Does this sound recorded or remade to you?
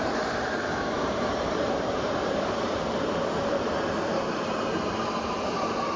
remade